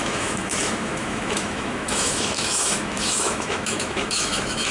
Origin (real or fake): fake